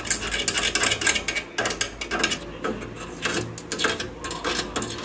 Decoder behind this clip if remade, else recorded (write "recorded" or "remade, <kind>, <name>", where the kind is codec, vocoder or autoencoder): recorded